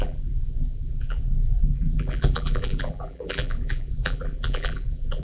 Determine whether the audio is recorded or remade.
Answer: remade